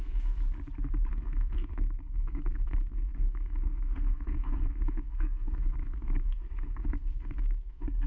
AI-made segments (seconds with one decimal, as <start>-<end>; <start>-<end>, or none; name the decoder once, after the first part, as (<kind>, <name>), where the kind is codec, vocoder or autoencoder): 0.0-0.4 (codec, SNAC); 1.1-8.1